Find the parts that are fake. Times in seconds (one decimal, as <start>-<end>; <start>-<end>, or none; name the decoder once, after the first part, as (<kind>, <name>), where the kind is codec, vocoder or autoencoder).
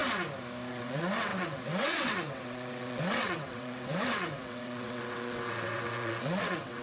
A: 0.7-6.8 (vocoder, WaveNeXt)